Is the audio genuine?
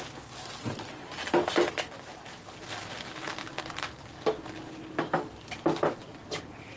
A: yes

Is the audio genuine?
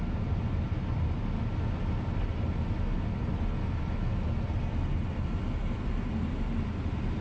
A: yes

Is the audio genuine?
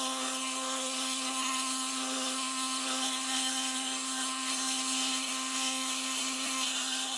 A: no